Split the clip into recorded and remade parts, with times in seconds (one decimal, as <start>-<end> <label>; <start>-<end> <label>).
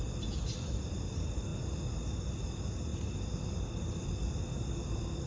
0.0-5.3 recorded